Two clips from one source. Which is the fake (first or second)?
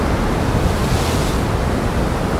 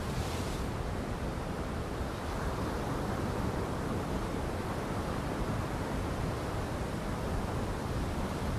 second